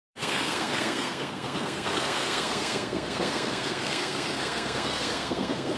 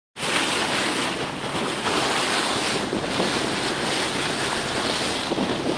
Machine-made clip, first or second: first